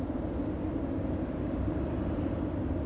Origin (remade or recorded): recorded